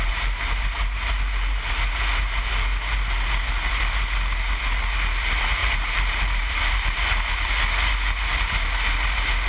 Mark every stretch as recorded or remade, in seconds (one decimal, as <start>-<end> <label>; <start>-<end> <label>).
0.0-5.6 recorded; 5.6-7.3 remade; 7.3-9.5 recorded